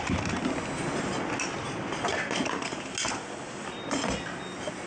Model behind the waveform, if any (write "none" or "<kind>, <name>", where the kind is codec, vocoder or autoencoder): none